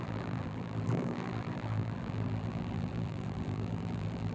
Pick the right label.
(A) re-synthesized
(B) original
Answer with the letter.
A